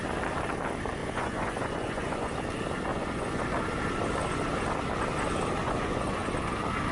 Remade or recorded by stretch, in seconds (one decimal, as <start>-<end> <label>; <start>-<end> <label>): 0.0-1.0 recorded; 1.0-2.3 remade; 2.3-2.9 recorded; 2.9-3.4 remade; 3.4-5.6 recorded; 5.6-6.3 remade; 6.3-6.9 recorded

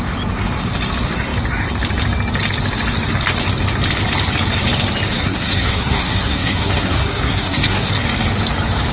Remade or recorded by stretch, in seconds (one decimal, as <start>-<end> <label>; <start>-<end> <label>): 0.0-5.1 recorded; 5.1-7.9 remade; 7.9-8.9 recorded